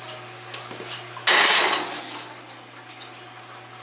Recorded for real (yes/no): yes